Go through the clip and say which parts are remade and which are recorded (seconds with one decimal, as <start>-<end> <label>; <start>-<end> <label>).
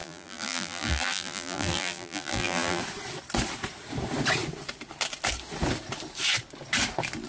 0.0-2.8 remade; 2.8-7.3 recorded